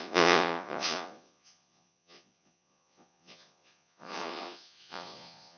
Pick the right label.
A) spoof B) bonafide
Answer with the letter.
A